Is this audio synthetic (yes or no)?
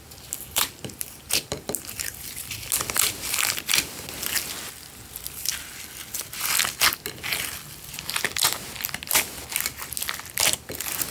no